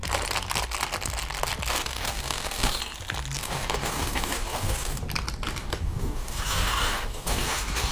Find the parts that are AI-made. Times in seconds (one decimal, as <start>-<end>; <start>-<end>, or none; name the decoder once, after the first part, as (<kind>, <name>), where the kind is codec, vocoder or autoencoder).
1.7-2.8 (codec, DAC); 3.4-5.0; 5.6-7.9

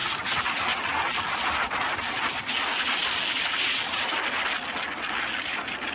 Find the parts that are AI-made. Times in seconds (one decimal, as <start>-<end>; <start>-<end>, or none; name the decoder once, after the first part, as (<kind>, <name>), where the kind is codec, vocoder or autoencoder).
none

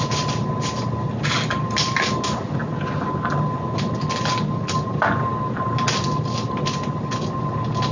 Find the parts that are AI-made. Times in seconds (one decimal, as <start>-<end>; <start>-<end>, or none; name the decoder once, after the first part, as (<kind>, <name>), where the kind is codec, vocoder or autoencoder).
none

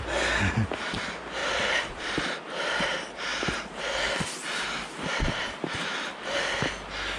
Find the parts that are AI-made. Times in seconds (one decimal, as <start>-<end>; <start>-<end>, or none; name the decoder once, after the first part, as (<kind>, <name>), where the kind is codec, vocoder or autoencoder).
1.4-2.2 (vocoder, BigVGAN v2)